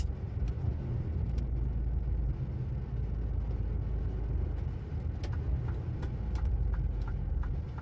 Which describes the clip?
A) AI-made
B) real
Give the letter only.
B